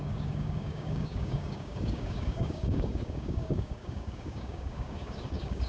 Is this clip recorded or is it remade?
remade